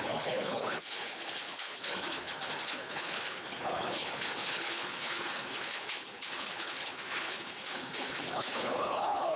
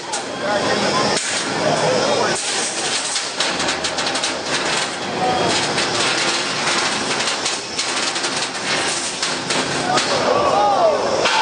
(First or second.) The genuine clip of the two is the second